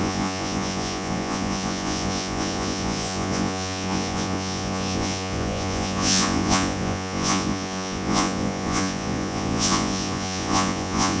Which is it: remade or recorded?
remade